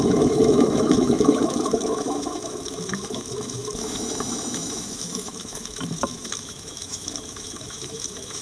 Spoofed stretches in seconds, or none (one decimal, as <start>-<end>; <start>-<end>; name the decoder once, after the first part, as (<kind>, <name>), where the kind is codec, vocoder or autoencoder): 0.0-8.4 (autoencoder, DAC-VAE)